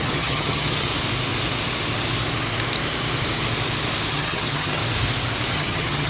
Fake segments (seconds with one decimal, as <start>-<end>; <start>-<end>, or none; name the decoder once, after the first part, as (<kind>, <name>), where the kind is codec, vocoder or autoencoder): 0.0-0.9 (vocoder, HiFi-GAN); 4.1-4.8; 5.5-6.1

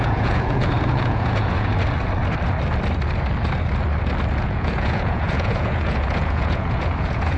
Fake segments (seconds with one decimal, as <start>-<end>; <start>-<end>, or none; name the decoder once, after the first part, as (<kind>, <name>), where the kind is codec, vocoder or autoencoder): 0.0-1.7 (vocoder, Vocos); 4.4-7.4

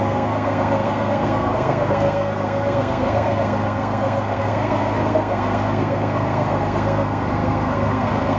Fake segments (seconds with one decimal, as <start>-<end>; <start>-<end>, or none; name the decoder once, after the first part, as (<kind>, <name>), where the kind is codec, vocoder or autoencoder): 0.0-8.4 (codec, SNAC)

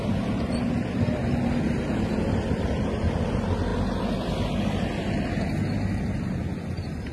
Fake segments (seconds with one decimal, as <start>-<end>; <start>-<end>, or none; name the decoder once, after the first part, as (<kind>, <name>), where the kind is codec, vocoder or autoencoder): none